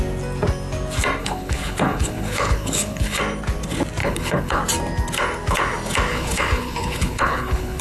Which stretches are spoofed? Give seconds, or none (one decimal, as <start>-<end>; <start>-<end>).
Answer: 1.2-3.2; 4.0-4.6; 6.1-7.8